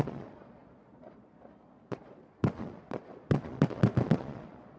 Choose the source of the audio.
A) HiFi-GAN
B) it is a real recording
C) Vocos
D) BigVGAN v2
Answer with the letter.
C